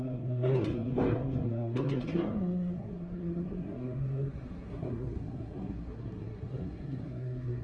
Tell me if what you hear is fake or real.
fake